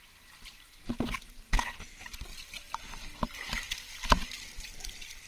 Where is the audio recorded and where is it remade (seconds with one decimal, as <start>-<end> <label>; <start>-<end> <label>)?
0.0-2.3 recorded; 2.3-5.3 remade